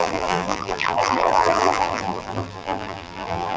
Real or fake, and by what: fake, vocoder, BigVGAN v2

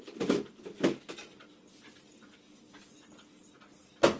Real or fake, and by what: real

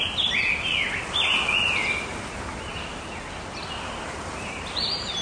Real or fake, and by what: real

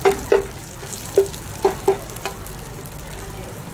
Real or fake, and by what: real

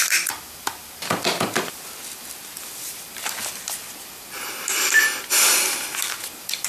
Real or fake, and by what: fake, vocoder, BigVGAN v2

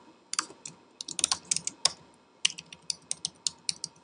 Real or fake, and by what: real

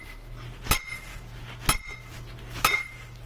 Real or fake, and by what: real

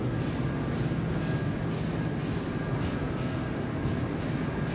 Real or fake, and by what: real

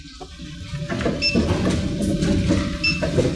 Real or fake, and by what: real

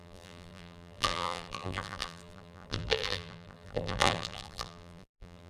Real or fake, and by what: fake, vocoder, BigVGAN v2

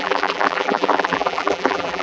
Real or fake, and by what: fake, vocoder, BigVGAN v2